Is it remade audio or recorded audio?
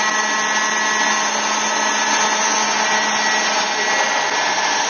recorded